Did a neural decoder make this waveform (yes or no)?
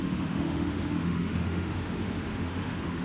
yes